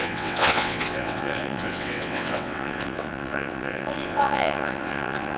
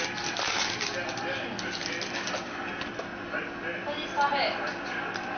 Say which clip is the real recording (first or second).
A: second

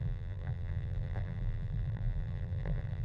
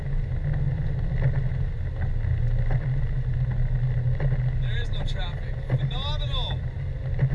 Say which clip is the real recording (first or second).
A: second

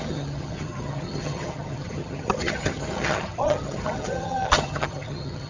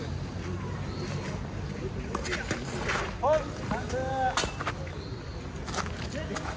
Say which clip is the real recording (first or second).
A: second